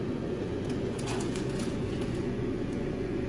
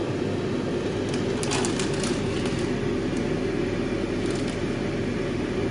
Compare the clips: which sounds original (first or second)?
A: second